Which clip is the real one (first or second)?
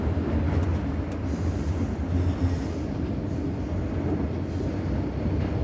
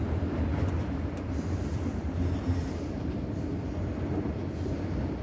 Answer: first